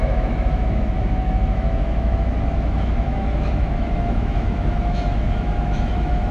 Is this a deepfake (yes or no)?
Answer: yes